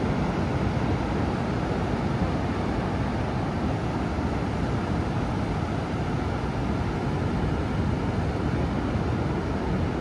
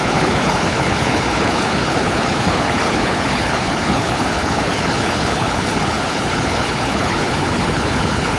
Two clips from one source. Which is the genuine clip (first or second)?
first